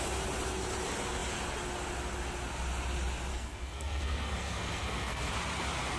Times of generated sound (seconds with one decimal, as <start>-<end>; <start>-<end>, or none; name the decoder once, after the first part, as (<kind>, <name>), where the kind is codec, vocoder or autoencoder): 3.3-5.3 (codec, SNAC)